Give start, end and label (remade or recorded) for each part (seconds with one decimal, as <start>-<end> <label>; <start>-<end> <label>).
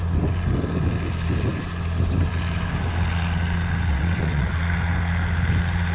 0.0-3.9 recorded; 3.9-4.6 remade; 4.6-5.9 recorded